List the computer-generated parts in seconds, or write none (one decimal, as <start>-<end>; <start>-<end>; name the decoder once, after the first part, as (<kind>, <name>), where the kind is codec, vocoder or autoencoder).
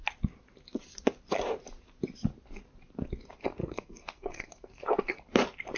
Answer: 3.6-5.2 (codec, SNAC)